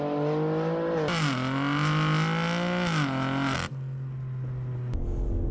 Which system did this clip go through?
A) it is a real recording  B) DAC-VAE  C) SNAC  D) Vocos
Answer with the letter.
A